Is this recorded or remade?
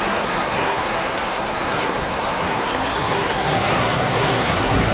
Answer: remade